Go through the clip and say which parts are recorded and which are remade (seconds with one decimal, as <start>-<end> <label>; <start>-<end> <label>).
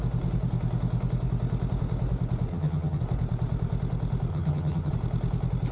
0.0-2.5 recorded; 2.5-3.0 remade; 3.0-4.3 recorded; 4.3-4.9 remade; 4.9-5.7 recorded